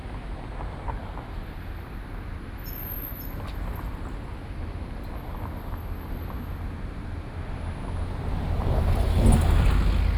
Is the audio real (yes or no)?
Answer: yes